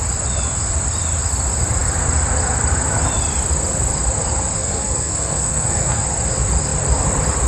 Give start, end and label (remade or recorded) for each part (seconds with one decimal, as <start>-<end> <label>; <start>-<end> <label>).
0.0-4.6 recorded; 4.6-6.0 remade; 6.0-7.5 recorded